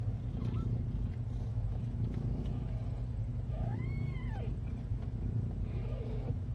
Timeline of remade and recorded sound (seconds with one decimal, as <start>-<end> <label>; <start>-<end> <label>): 0.0-1.5 recorded; 1.5-2.8 remade; 2.8-3.3 recorded; 3.3-3.8 remade; 3.8-4.9 recorded; 4.9-6.5 remade